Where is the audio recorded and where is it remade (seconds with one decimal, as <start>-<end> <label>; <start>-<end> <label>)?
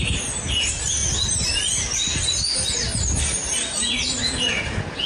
0.0-4.2 recorded; 4.2-5.1 remade